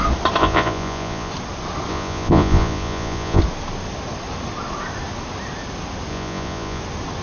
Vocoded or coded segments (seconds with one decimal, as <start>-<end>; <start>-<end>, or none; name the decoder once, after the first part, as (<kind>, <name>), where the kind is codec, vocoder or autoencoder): 0.4-1.3 (vocoder, Vocos); 1.9-3.4; 6.1-6.8